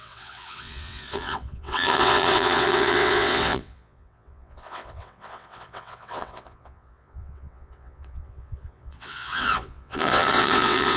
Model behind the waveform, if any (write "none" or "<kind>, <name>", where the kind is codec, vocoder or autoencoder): vocoder, WaveNeXt